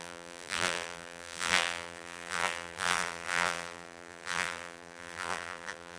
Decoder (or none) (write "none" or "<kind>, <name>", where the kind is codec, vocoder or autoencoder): vocoder, BigVGAN v2